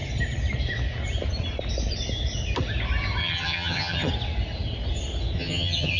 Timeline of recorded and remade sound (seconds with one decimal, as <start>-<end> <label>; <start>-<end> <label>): 0.0-3.2 recorded; 3.2-4.1 remade; 4.1-5.4 recorded; 5.4-6.0 remade